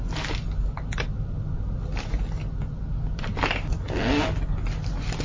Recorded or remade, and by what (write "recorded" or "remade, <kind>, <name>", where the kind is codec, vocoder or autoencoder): recorded